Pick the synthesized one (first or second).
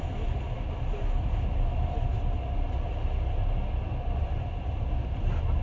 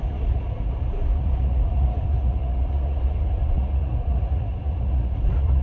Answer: second